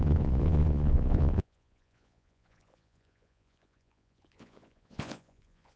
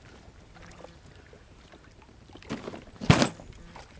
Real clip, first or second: second